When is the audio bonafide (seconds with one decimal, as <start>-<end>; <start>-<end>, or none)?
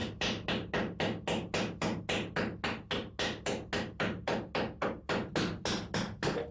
0.0-6.5